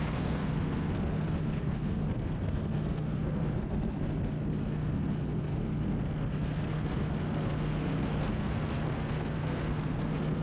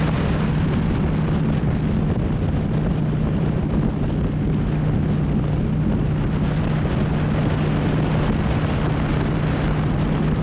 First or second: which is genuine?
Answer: second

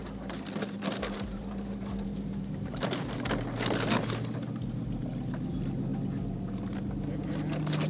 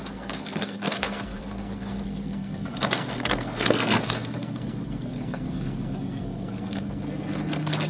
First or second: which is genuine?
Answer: first